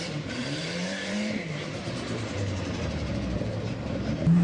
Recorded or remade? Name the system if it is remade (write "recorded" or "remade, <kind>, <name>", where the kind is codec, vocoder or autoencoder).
remade, vocoder, BigVGAN v2